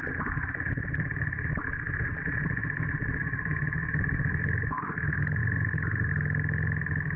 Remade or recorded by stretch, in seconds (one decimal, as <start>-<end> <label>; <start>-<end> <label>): 0.0-3.2 recorded; 3.2-4.8 remade; 4.8-5.4 recorded; 5.4-6.1 remade; 6.1-7.2 recorded